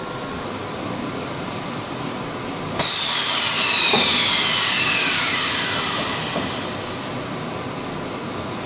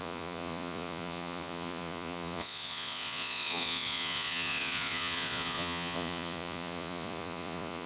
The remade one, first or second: second